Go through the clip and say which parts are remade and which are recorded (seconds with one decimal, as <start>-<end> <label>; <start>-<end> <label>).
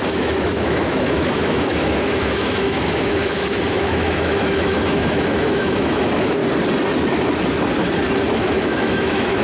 0.0-6.4 remade; 6.4-8.3 recorded; 8.3-9.4 remade